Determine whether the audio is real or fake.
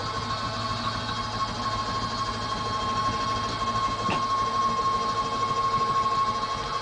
real